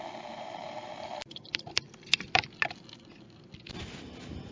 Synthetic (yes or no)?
no